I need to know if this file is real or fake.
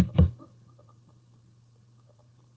fake